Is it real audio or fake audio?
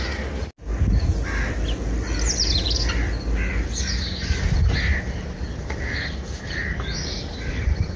real